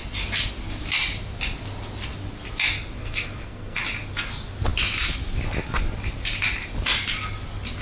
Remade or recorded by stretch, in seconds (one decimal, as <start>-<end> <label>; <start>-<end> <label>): 0.0-3.0 recorded; 3.0-3.8 remade; 3.8-7.8 recorded